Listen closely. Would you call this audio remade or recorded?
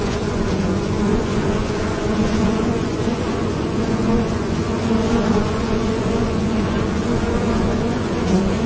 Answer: remade